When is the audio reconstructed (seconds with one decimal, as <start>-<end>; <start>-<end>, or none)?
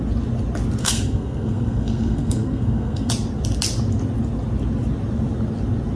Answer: 0.8-3.1